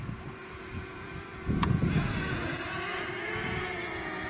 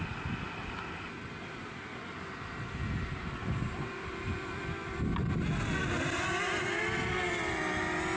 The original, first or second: second